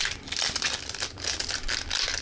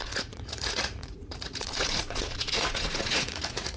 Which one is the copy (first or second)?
second